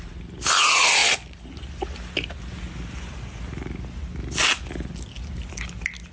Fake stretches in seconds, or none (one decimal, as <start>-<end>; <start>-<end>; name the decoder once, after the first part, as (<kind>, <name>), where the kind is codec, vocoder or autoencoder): none